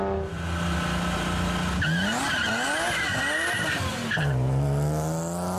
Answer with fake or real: real